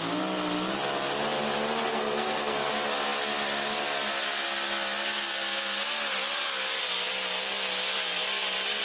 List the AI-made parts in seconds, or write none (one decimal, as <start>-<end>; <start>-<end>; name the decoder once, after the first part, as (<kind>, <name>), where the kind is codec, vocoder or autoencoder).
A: 1.9-2.7 (codec, SNAC)